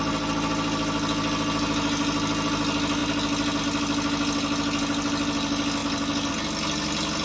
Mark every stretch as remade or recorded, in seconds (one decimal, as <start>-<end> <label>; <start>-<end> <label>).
0.0-7.2 recorded